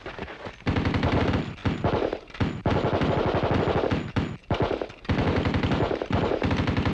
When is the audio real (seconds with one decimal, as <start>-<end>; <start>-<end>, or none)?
0.0-6.9